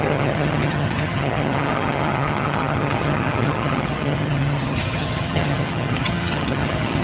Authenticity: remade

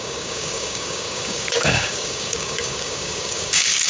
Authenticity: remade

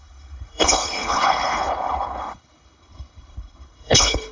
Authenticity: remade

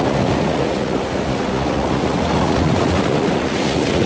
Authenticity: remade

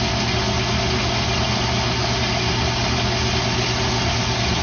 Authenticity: recorded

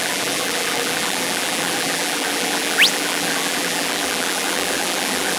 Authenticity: remade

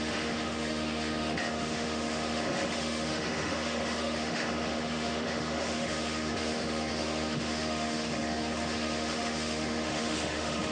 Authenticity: remade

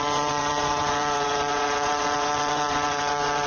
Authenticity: remade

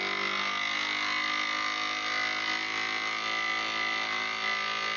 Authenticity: recorded